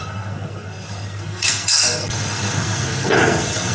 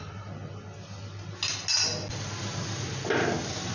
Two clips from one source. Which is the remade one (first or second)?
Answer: first